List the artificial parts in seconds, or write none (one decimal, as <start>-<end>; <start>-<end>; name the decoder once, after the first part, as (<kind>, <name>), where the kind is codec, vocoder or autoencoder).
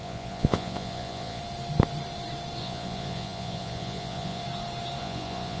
0.0-1.4 (vocoder, Vocos); 2.6-4.4; 5.0-5.6